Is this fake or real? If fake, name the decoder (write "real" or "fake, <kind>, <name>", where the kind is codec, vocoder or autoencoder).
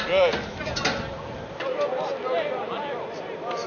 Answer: real